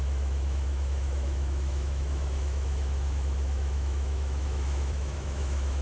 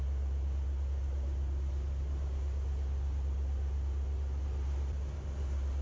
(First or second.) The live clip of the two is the second